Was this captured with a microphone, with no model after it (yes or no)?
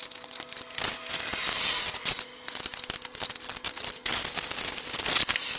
yes